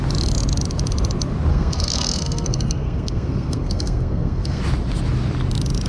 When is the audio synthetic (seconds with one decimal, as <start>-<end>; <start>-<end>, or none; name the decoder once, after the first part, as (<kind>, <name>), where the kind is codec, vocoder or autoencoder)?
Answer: 1.5-4.6 (codec, SNAC)

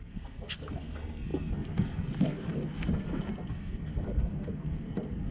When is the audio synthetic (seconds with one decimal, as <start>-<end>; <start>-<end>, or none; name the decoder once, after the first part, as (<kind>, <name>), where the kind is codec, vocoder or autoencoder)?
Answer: 0.0-5.3 (codec, SNAC)

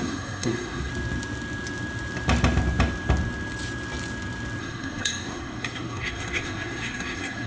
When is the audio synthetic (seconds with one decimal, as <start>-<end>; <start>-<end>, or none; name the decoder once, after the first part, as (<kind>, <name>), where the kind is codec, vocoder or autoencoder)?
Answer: 0.0-0.9 (codec, SNAC); 4.6-7.5